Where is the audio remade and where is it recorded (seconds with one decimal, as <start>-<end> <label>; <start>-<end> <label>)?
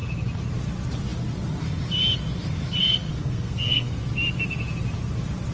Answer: 0.0-2.8 recorded; 2.8-4.0 remade; 4.0-5.5 recorded